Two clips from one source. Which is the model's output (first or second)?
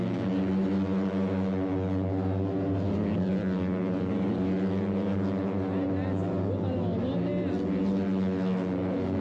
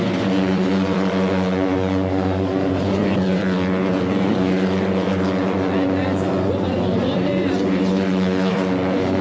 second